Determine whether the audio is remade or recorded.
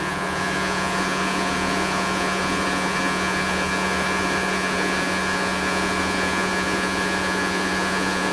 remade